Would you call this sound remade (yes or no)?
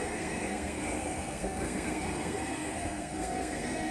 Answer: yes